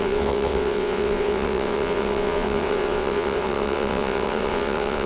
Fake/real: fake